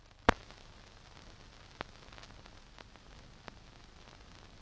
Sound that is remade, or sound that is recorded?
recorded